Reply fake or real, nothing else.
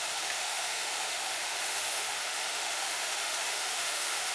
fake